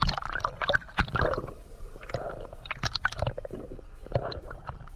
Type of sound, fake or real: fake